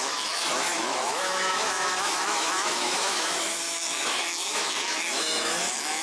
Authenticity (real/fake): fake